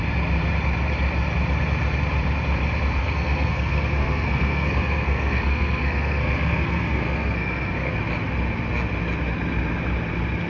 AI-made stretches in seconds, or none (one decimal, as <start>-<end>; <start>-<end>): 3.0-7.9